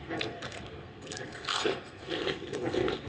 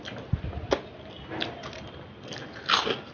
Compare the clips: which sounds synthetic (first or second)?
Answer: first